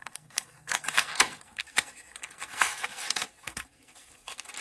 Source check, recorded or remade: remade